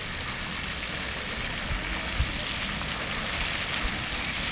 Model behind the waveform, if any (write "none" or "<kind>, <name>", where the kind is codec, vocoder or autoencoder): none